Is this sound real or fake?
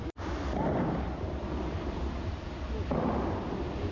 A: real